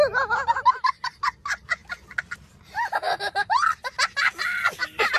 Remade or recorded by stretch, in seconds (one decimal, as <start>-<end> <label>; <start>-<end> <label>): 0.0-5.2 recorded